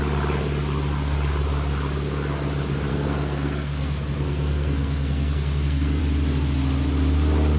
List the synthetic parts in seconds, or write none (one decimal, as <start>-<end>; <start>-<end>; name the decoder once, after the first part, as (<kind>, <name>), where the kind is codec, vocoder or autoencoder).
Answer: 2.9-6.0 (codec, SNAC)